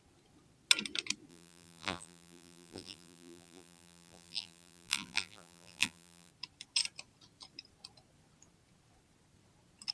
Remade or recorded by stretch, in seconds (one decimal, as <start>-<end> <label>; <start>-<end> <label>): 0.0-1.3 recorded; 1.3-6.3 remade; 6.3-9.9 recorded